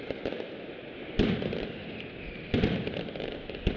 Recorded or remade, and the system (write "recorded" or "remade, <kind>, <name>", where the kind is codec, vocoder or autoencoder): remade, vocoder, BigVGAN v2